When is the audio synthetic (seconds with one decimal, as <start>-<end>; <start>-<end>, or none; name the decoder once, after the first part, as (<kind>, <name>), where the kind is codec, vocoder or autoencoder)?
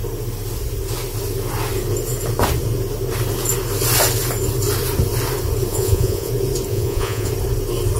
5.7-6.3 (vocoder, Vocos); 6.7-7.3